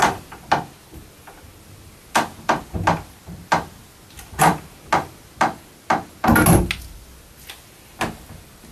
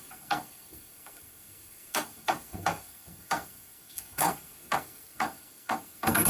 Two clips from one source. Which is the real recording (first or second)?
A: first